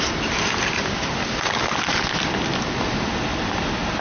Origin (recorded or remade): recorded